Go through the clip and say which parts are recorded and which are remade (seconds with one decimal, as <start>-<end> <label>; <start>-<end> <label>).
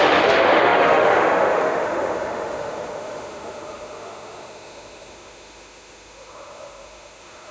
0.0-7.5 remade